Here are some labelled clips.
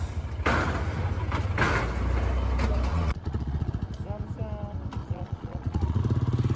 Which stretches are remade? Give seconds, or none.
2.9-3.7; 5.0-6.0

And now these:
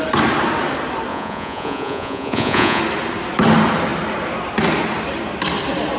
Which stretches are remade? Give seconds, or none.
1.1-2.8

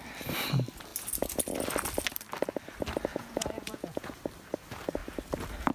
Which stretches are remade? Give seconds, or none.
3.1-4.1